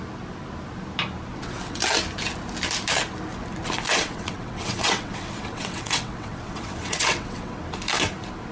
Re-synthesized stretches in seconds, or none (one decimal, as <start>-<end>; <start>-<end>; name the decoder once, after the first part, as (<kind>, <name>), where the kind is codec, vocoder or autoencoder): 1.3-1.8 (vocoder, WaveNeXt); 3.9-7.6